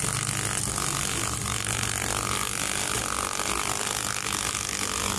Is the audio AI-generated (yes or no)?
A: no